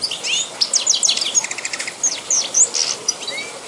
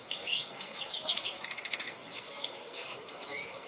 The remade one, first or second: second